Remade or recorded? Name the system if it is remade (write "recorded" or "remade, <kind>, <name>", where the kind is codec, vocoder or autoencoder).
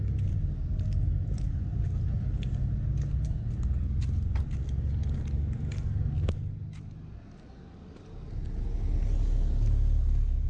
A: recorded